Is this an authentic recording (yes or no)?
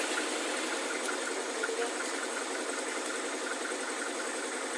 yes